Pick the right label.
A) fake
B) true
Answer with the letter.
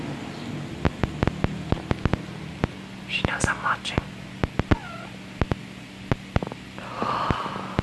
B